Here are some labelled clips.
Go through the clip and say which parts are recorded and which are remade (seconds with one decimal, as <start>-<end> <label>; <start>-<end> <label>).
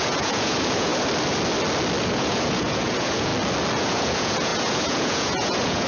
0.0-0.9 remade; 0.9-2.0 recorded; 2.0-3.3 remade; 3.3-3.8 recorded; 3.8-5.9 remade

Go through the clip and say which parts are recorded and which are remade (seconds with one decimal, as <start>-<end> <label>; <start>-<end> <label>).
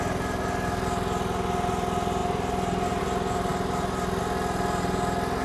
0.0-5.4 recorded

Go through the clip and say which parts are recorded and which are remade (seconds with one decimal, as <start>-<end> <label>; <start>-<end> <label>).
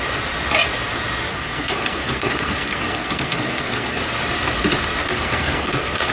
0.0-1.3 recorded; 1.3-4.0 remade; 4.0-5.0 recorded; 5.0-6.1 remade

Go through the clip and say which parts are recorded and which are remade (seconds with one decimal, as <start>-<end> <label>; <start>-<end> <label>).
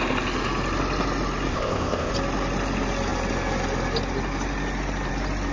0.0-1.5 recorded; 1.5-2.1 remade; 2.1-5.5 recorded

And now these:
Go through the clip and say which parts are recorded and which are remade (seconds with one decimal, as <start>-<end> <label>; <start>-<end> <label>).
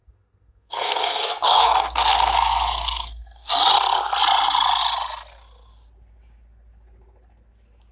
0.0-3.5 remade; 3.5-7.9 recorded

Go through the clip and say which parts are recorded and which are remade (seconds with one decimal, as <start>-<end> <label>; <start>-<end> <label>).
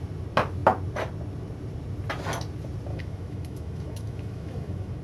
0.0-2.9 recorded; 2.9-5.0 remade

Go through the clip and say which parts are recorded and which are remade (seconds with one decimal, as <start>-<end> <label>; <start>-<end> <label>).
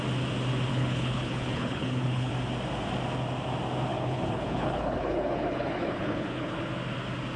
0.0-0.7 recorded; 0.7-2.3 remade; 2.3-3.9 recorded; 3.9-6.6 remade; 6.6-7.4 recorded